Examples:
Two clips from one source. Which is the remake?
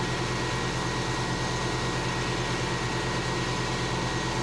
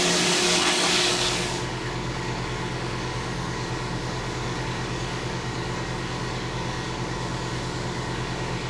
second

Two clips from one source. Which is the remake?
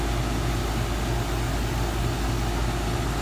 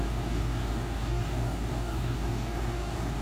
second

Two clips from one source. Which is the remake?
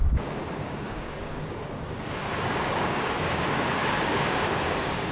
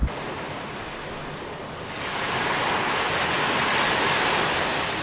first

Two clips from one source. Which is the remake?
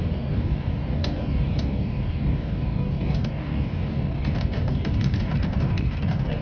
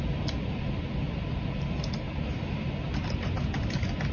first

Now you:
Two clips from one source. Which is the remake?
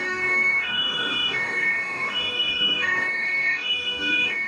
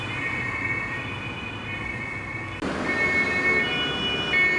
first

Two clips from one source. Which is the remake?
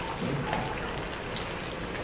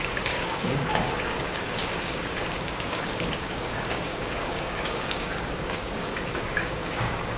second